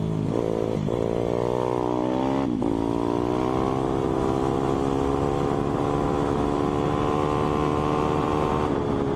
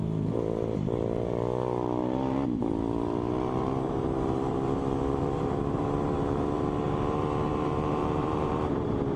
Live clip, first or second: first